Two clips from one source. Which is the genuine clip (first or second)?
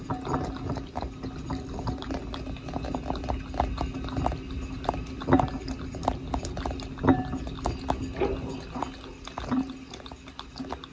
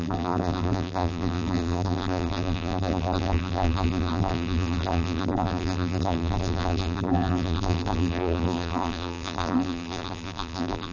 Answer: first